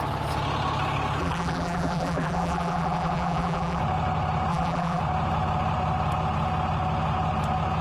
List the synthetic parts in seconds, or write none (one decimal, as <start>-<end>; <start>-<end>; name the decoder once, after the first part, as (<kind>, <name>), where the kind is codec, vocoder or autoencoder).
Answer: 1.2-3.8 (vocoder, BigVGAN v2); 4.5-5.0